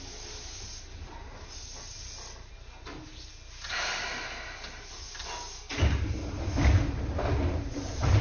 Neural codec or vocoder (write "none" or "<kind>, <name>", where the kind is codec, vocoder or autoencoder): none